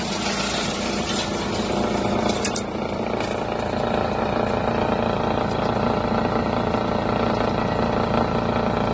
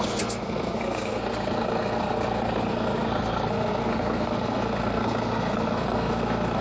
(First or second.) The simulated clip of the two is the second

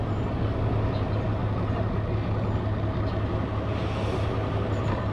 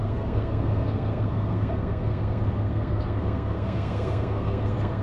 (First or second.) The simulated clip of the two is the second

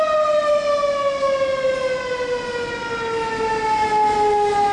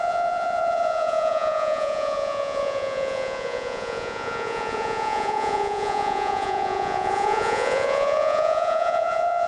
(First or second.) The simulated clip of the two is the second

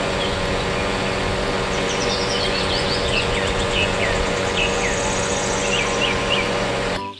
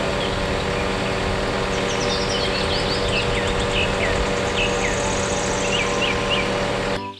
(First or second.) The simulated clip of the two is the first